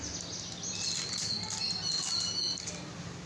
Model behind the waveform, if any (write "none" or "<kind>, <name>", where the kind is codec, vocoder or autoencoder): none